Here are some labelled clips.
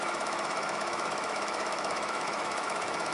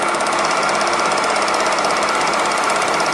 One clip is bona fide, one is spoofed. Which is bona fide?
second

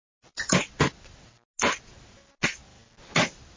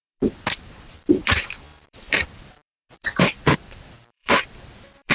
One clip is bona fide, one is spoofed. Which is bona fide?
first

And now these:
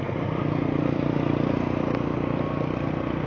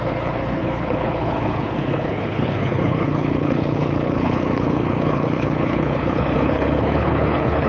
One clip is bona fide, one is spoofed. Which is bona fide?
first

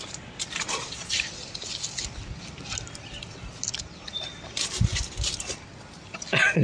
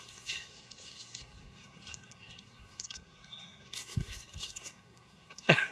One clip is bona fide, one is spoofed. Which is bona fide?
first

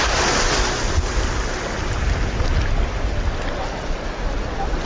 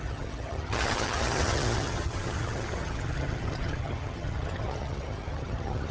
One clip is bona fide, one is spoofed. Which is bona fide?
first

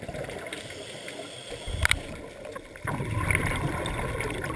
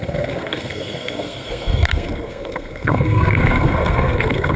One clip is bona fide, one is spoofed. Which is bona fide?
first